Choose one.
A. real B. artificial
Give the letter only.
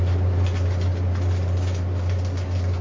A